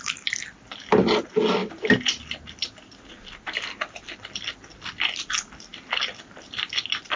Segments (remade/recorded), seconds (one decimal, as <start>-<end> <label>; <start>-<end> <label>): 0.0-7.2 recorded